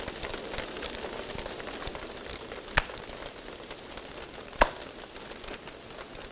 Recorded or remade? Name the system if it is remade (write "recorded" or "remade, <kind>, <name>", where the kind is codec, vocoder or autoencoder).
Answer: recorded